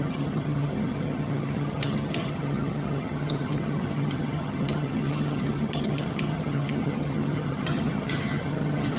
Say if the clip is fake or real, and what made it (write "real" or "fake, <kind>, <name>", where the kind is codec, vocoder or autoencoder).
fake, vocoder, HiFi-GAN